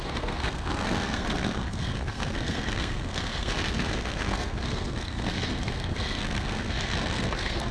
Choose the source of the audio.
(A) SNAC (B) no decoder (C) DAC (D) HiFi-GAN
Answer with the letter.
A